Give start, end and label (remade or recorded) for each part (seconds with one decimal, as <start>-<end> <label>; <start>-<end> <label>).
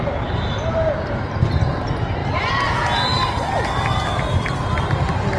0.0-5.4 recorded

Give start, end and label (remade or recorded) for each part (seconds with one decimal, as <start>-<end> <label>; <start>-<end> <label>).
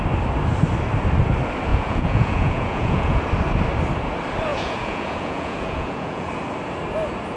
0.0-1.7 recorded; 1.7-3.2 remade; 3.2-4.5 recorded; 4.5-6.3 remade; 6.3-7.4 recorded